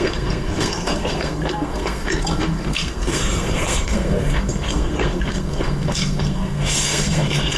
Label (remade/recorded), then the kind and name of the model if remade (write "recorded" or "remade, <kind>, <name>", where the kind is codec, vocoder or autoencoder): remade, codec, SNAC